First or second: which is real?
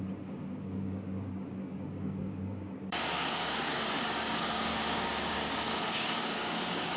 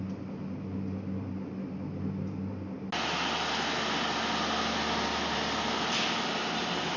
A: second